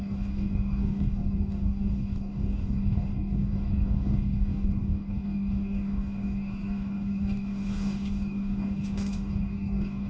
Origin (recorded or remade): remade